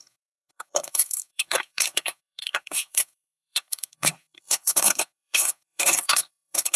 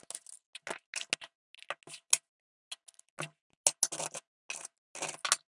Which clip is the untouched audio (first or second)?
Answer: second